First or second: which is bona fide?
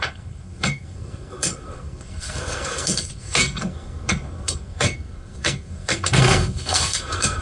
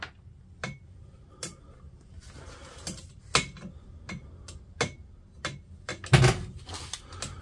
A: second